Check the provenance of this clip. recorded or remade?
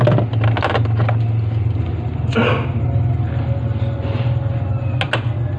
recorded